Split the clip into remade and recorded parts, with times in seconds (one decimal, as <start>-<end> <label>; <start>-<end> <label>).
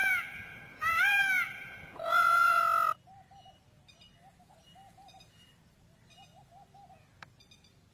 0.0-2.6 remade; 2.6-7.9 recorded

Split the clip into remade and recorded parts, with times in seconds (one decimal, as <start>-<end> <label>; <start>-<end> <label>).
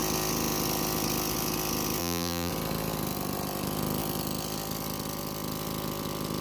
0.0-2.0 recorded; 2.0-2.5 remade; 2.5-6.4 recorded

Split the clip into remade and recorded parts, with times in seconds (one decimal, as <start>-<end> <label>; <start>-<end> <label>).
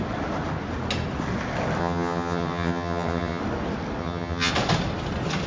0.0-1.8 recorded; 1.8-3.4 remade; 3.4-4.0 recorded; 4.0-4.5 remade; 4.5-5.5 recorded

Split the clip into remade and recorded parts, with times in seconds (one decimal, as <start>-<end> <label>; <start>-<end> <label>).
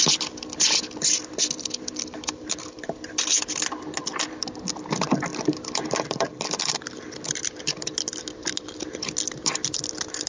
0.0-5.3 recorded; 5.3-6.6 remade; 6.6-10.3 recorded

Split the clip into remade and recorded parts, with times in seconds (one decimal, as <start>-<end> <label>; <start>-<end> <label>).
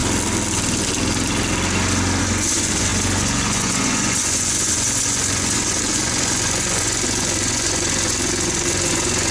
0.0-2.2 recorded; 2.2-9.3 remade